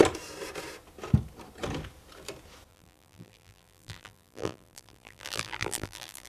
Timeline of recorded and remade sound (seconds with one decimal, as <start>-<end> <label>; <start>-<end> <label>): 0.0-2.7 recorded; 2.7-6.3 remade